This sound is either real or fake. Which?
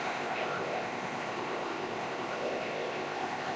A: fake